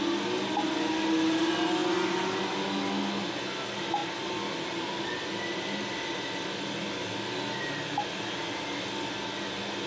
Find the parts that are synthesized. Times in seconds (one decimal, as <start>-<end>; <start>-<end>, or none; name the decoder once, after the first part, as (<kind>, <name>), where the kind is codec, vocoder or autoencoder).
none